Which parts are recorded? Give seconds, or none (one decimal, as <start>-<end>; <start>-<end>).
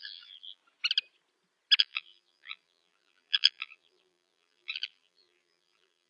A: 0.6-1.8